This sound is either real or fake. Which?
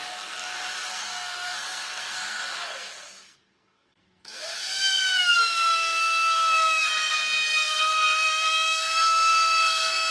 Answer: fake